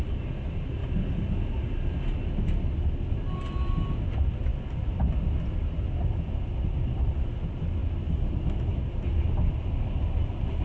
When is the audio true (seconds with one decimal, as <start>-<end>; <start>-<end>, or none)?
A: 0.0-10.6